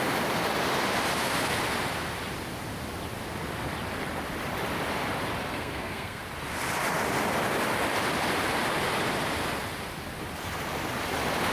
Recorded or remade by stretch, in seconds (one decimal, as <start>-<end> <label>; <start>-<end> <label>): 0.0-5.4 recorded; 5.4-6.2 remade; 6.2-11.5 recorded